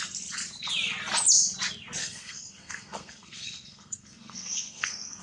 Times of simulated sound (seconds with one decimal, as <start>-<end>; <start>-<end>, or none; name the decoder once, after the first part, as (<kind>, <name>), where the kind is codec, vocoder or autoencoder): 2.0-5.2 (codec, SNAC)